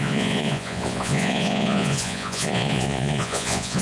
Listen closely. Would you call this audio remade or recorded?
remade